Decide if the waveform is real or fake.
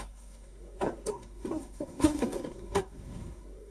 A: fake